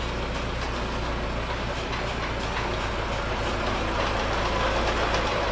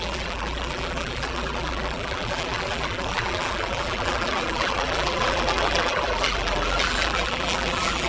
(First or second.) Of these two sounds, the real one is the first